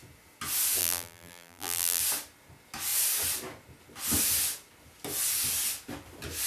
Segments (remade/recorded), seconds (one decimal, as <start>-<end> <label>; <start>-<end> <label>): 0.0-0.8 recorded; 0.8-2.0 remade; 2.0-6.5 recorded

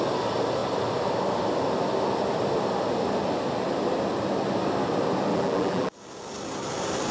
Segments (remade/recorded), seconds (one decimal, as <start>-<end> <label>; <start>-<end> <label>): 0.0-5.3 recorded; 5.3-5.9 remade; 5.9-7.1 recorded